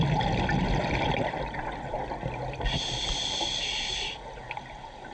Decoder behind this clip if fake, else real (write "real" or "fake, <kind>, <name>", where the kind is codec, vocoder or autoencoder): real